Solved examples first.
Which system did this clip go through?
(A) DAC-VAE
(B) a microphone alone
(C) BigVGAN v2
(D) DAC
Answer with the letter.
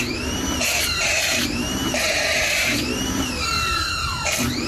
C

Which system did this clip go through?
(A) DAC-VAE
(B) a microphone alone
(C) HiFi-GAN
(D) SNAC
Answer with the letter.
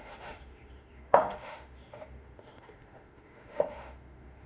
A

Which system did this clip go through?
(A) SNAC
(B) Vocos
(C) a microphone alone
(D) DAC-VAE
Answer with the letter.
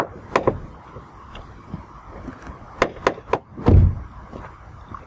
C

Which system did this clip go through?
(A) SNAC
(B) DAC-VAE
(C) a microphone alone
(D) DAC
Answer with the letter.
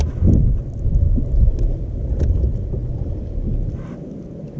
C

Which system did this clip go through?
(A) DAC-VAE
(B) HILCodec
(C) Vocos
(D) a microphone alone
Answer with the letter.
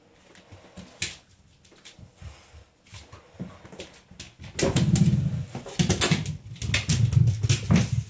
D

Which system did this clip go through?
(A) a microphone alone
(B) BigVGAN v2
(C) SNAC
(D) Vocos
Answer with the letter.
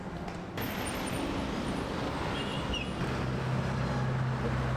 A